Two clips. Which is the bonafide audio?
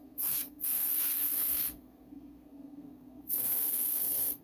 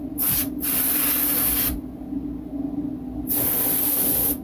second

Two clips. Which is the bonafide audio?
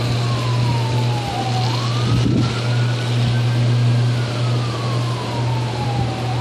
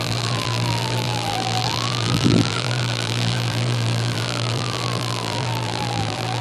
first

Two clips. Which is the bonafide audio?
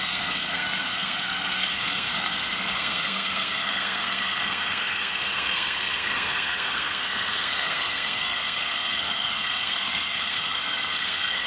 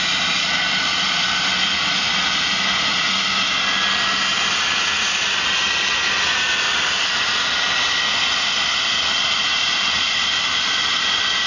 second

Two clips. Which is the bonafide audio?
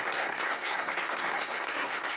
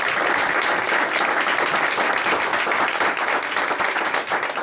second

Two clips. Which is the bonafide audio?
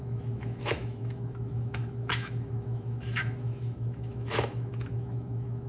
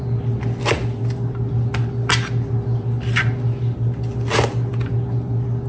second